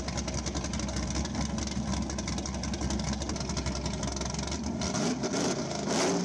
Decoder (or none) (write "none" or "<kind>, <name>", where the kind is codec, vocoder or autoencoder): none